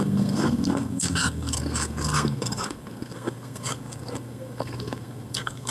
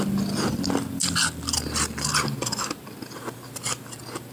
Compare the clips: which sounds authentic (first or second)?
second